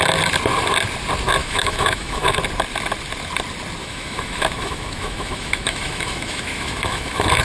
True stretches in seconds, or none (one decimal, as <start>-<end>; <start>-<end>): 0.0-1.4; 2.4-3.8